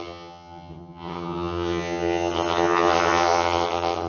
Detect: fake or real fake